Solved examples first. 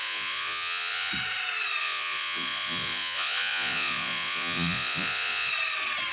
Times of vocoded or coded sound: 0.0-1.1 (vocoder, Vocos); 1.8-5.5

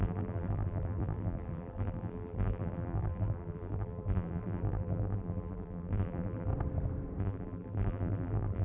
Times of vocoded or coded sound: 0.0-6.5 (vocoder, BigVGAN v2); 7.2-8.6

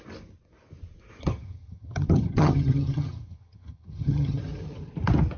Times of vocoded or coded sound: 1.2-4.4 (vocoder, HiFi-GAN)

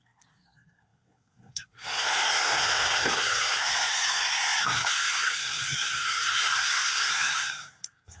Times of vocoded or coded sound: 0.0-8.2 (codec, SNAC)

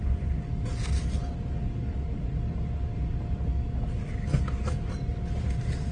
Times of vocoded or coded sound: none

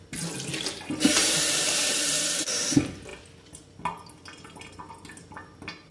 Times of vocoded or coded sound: 1.2-2.7 (vocoder, BigVGAN v2)

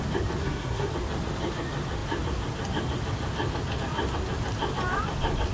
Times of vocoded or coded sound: 0.4-0.9 (codec, SNAC)